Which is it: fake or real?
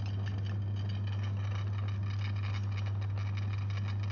real